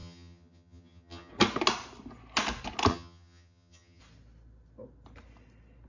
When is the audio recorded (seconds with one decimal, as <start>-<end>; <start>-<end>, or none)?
1.3-2.9; 4.0-5.9